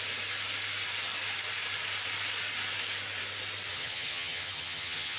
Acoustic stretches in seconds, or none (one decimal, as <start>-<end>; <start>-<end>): 0.0-3.7